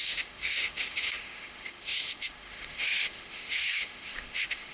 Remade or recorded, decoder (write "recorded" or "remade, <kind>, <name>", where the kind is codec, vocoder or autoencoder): remade, autoencoder, DAC-VAE